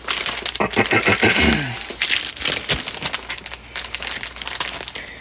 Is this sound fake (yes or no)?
no